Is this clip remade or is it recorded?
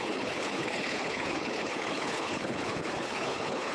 remade